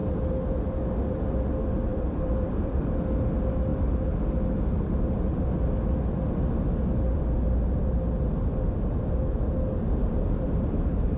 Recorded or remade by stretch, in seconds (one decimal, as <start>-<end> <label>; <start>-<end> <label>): 0.0-1.9 recorded; 1.9-2.8 remade; 2.8-10.0 recorded; 10.0-11.2 remade